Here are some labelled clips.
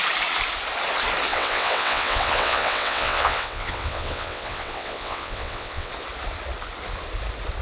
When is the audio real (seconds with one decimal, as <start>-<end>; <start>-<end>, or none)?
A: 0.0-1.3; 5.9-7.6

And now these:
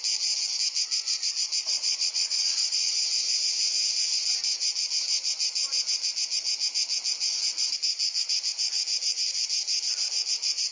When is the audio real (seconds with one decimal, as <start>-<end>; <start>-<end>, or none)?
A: 0.0-1.6; 2.9-10.7

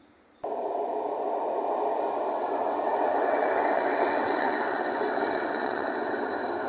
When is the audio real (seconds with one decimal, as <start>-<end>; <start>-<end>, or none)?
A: 0.0-2.3; 6.3-6.7